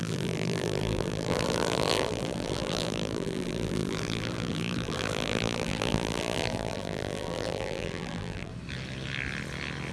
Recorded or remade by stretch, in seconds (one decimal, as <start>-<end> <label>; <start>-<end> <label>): 0.0-8.5 remade; 8.5-9.9 recorded